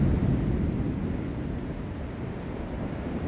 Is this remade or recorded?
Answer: recorded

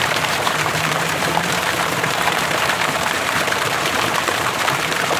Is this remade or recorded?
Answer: remade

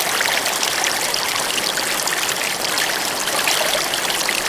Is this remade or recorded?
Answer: remade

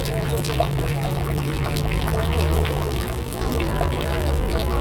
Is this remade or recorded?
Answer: remade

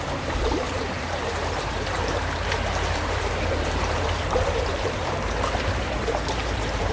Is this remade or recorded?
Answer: remade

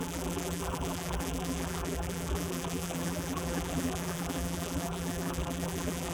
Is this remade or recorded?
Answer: remade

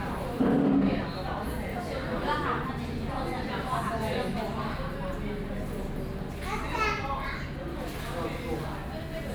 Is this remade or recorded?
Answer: recorded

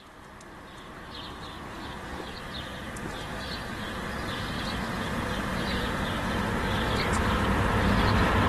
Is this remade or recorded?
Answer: recorded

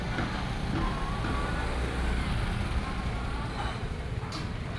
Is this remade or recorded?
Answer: recorded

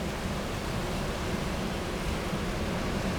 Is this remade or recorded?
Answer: recorded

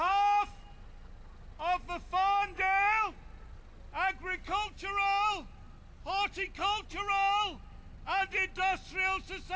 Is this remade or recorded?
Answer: recorded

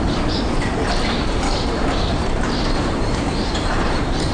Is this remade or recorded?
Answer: remade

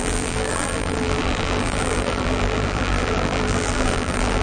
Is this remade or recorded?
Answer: remade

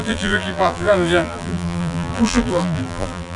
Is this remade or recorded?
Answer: remade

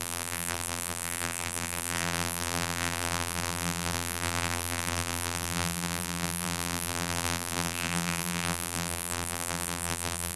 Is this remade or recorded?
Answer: remade